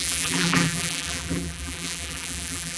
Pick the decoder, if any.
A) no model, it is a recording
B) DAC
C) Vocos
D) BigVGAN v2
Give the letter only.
D